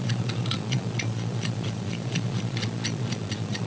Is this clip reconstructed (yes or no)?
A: yes